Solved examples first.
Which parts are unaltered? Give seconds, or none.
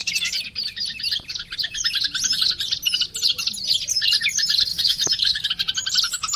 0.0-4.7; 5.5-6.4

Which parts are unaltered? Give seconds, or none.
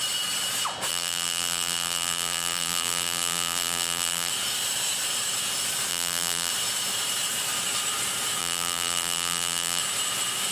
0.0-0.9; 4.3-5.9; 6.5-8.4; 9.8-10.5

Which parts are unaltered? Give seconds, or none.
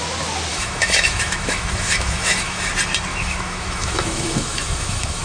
0.0-0.5; 2.7-3.1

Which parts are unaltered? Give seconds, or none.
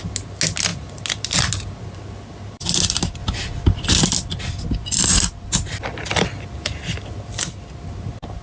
0.0-8.4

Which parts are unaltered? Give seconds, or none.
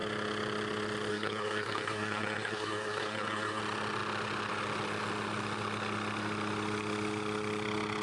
0.0-1.1; 3.6-8.0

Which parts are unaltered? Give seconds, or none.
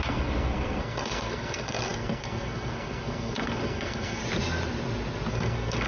4.2-5.3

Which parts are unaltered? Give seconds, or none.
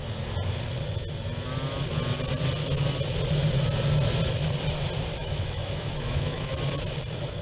0.0-5.2; 6.5-7.4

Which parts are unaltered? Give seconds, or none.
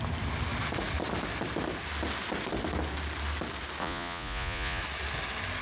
0.0-3.8; 4.8-5.6